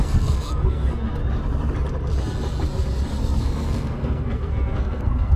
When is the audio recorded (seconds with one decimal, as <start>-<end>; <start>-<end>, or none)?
1.2-3.2